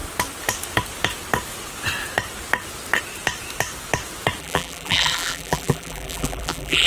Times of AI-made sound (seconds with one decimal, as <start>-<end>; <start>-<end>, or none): 4.4-6.9